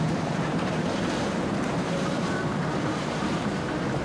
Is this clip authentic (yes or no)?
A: no